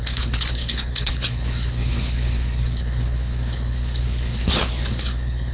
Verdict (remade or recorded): remade